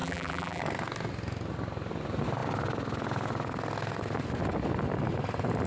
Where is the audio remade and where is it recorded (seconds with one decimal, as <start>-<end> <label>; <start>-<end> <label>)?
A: 0.0-0.6 remade; 0.6-5.7 recorded